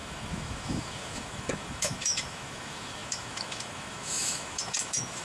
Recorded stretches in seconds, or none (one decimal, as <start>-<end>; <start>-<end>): none